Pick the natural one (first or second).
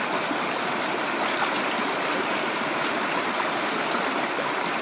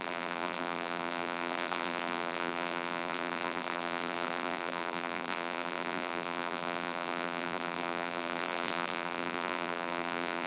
first